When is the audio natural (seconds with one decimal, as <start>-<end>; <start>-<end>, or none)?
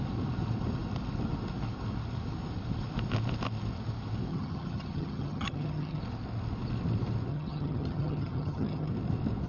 0.0-4.3; 6.0-7.3; 8.9-9.5